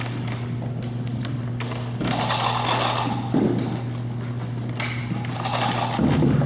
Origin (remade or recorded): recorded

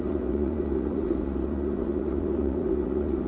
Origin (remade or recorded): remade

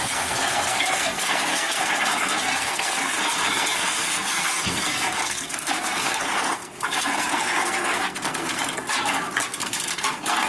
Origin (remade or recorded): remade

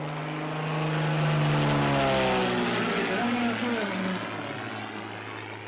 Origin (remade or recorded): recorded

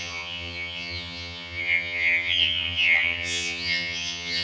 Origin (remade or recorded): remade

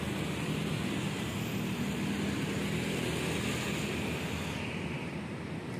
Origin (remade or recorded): recorded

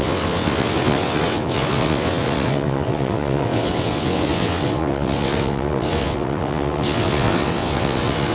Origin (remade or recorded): remade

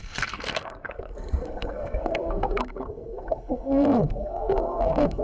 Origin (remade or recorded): remade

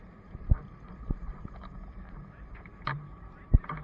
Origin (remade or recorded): remade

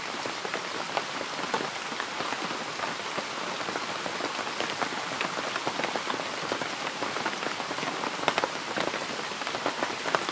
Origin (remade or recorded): recorded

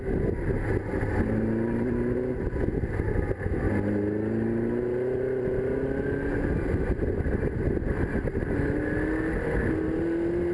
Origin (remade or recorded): recorded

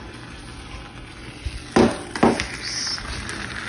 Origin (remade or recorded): recorded